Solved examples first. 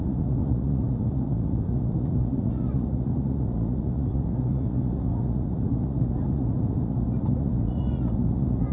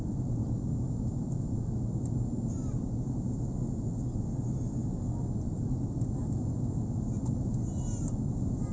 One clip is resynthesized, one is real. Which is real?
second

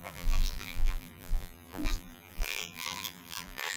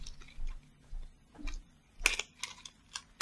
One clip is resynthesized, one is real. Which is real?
second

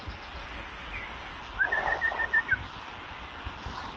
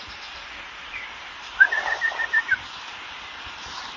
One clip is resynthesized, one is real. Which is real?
first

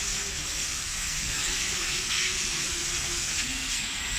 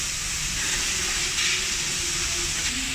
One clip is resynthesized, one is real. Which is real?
second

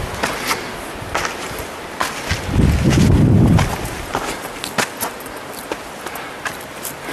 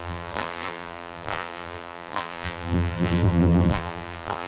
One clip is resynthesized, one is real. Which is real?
first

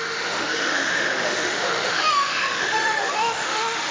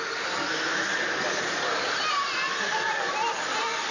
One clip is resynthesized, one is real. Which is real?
second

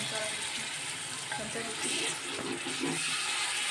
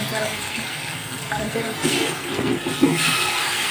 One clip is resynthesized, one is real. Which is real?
first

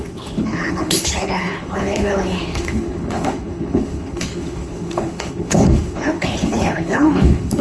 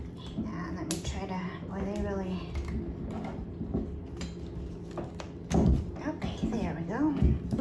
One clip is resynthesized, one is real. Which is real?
second